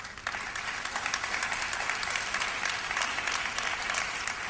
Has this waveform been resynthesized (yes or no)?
no